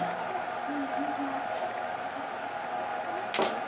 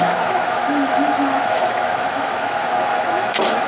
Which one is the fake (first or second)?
second